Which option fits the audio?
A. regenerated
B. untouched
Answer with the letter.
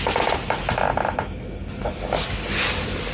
B